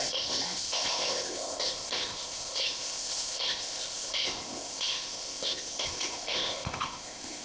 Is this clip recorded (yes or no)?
no